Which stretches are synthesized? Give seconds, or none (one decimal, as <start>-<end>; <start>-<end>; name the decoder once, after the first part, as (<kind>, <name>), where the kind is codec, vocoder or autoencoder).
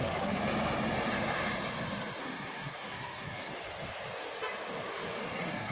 0.0-0.4 (codec, SNAC); 2.2-3.5; 5.2-5.7